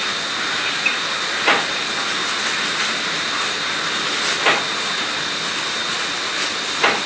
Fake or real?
real